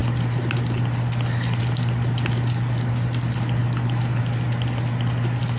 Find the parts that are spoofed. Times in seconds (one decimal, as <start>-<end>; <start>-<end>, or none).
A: none

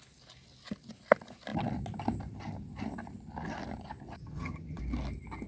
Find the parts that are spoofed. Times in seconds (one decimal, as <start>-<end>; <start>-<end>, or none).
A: 4.2-4.8

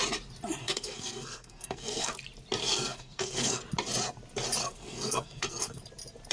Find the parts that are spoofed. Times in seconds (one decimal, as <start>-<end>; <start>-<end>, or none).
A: 0.6-2.1; 2.6-3.6; 4.6-5.8

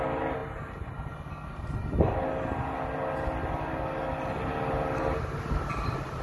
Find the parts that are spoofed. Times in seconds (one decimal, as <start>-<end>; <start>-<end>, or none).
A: none

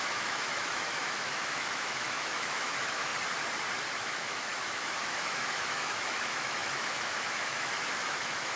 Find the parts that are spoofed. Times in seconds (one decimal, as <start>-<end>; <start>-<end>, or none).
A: 0.0-3.1; 4.0-8.6

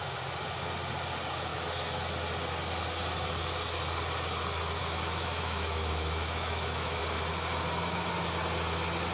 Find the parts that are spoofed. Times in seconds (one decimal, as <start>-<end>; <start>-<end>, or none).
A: 1.5-2.0; 4.8-7.0